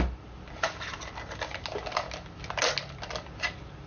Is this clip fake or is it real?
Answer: real